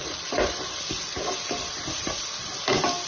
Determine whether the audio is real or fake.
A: real